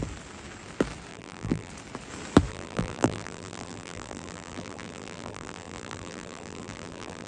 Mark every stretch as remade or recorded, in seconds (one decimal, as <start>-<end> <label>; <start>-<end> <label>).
0.0-1.1 recorded; 1.1-1.7 remade; 1.7-2.5 recorded; 2.5-7.3 remade